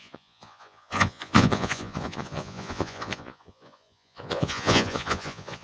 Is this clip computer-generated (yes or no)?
yes